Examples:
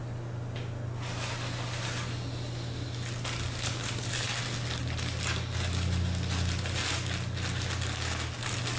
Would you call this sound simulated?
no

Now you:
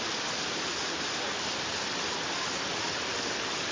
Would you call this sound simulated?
no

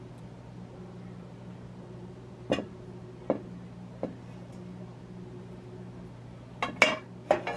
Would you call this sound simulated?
no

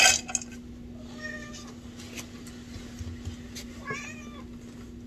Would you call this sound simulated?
no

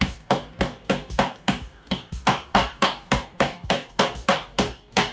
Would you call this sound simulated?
yes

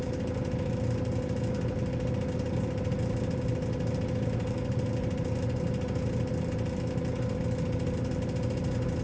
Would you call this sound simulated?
no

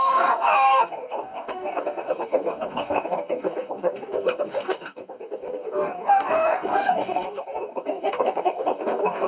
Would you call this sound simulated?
yes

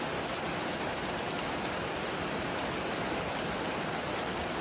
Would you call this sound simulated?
no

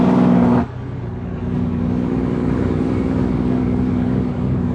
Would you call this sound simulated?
yes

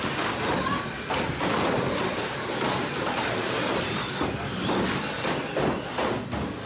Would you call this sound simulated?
no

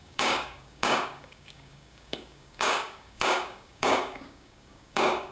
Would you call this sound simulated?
yes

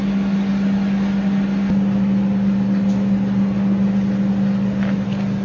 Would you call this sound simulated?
no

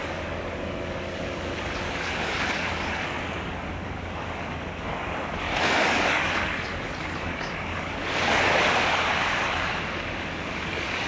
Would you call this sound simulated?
yes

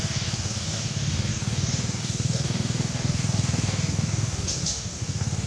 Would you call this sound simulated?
yes